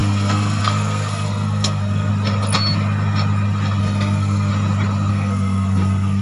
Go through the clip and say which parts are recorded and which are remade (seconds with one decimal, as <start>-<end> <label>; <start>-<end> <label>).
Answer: 0.0-2.1 remade; 2.1-3.8 recorded; 3.8-4.5 remade; 4.5-5.1 recorded; 5.1-6.2 remade